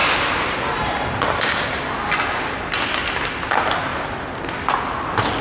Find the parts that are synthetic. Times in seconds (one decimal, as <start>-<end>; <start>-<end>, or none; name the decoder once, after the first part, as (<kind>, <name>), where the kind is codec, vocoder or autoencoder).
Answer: none